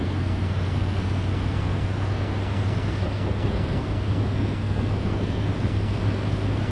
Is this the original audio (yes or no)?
no